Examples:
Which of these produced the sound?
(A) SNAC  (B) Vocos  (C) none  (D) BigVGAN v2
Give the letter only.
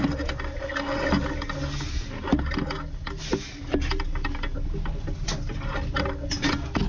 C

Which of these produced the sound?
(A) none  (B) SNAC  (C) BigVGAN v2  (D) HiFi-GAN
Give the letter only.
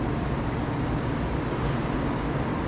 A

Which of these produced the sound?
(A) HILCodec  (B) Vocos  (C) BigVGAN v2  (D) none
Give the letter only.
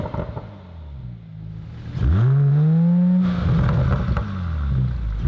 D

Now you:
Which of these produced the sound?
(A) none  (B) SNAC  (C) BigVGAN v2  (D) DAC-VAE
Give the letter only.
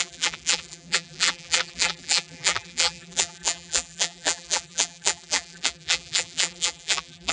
C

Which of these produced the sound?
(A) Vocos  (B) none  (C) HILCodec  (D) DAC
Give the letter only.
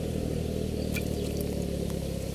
B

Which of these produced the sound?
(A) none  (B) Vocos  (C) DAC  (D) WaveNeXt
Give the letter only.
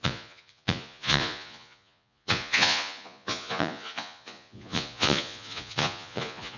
B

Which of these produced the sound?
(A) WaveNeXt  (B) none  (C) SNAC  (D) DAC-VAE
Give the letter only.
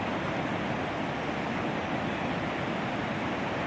B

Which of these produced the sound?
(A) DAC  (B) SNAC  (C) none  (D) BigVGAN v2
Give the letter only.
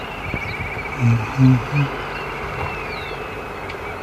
C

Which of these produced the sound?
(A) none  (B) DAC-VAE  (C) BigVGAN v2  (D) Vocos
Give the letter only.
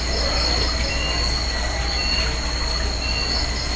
A